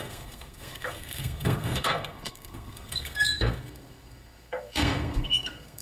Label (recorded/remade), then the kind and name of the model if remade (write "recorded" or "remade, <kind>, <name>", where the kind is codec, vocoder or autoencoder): remade, codec, SNAC